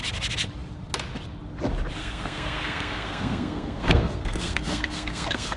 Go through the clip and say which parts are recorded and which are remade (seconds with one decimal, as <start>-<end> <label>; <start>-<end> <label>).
0.0-2.0 recorded; 2.0-5.6 remade